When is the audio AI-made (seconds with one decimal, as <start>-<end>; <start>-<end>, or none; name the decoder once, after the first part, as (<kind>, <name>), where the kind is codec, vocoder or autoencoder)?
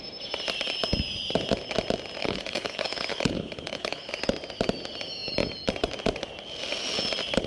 2.2-4.1 (codec, HILCodec)